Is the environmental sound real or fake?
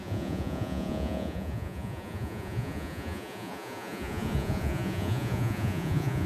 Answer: fake